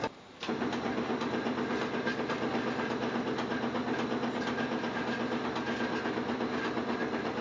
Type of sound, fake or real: real